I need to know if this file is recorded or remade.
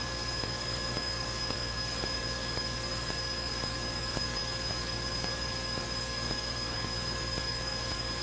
remade